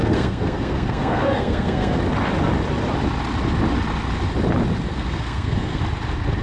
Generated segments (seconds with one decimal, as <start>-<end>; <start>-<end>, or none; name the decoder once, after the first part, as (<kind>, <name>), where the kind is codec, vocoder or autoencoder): 0.0-2.0 (codec, SNAC); 4.9-5.8